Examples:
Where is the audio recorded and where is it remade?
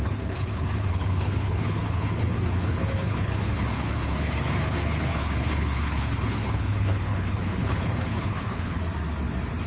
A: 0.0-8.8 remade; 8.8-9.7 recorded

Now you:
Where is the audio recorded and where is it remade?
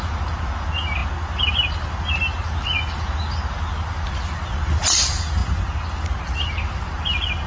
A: 0.0-7.5 recorded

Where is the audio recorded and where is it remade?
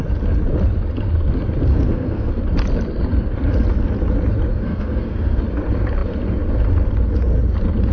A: 0.0-1.7 recorded; 1.7-2.4 remade; 2.4-4.5 recorded; 4.5-5.4 remade; 5.4-7.9 recorded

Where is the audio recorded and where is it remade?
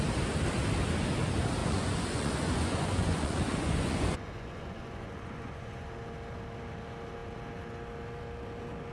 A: 0.0-1.6 recorded; 1.6-5.9 remade; 5.9-8.9 recorded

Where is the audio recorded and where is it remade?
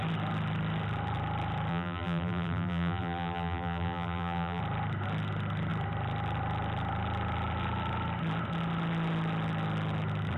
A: 0.0-1.7 recorded; 1.7-4.6 remade; 4.6-10.4 recorded